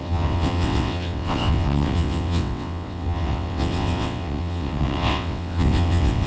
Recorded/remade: remade